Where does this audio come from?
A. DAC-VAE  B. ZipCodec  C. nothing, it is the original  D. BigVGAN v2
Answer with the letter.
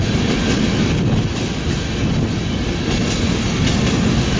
C